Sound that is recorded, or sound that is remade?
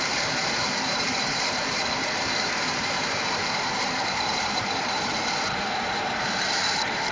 remade